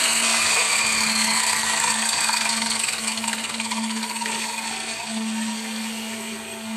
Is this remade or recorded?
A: remade